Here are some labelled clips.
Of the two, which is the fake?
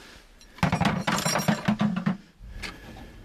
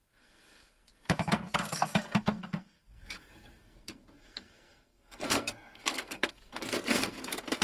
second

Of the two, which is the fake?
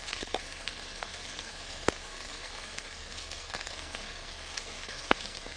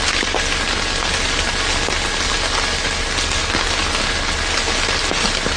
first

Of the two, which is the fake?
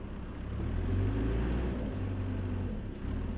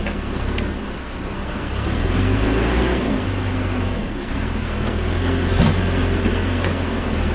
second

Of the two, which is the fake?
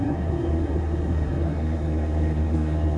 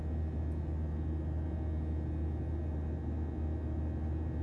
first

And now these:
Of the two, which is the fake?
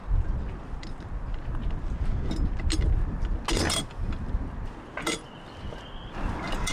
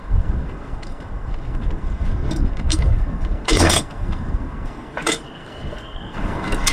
second